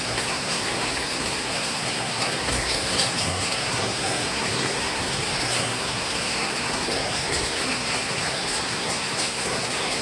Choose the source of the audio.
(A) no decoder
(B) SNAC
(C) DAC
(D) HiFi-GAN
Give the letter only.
B